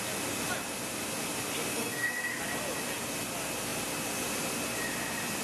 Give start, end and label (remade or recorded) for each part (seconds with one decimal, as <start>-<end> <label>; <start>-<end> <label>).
0.0-1.7 recorded; 1.7-2.4 remade; 2.4-5.4 recorded